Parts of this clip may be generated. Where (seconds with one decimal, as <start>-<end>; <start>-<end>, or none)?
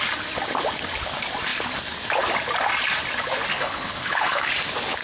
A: 3.5-4.5